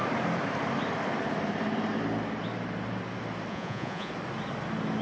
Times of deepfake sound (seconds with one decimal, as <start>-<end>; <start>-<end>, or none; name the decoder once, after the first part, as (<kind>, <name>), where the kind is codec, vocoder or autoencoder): 3.5-4.1 (vocoder, Vocos)